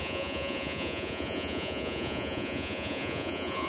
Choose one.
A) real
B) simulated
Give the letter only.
B